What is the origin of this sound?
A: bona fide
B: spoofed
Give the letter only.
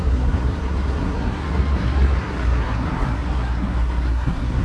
B